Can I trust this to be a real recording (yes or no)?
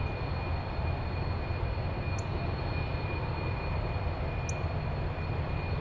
yes